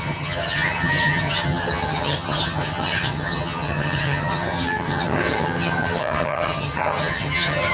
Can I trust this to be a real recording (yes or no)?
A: no